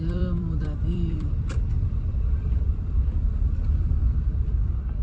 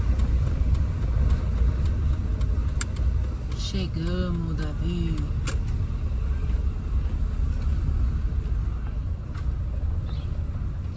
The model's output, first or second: first